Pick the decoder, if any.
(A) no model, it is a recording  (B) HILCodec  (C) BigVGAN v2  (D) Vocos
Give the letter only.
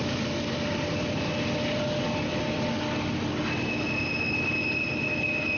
A